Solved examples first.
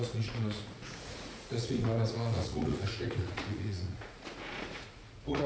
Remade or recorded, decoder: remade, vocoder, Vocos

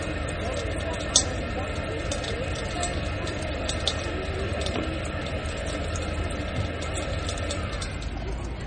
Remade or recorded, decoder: recorded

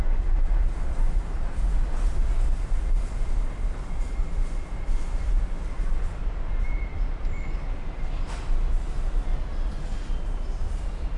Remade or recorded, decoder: recorded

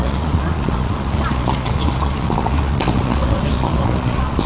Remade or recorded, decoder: remade, vocoder, Vocos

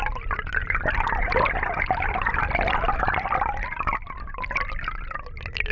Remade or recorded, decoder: recorded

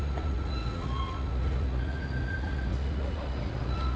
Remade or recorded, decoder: remade, vocoder, Vocos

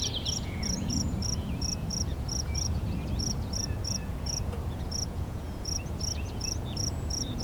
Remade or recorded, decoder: remade, vocoder, Vocos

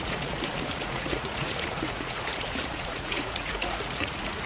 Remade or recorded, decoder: remade, vocoder, Vocos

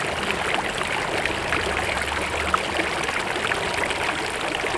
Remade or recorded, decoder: recorded